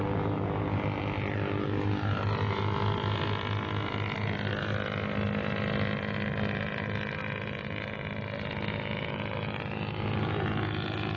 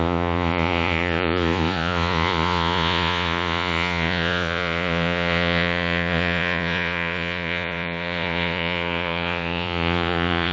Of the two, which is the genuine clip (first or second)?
first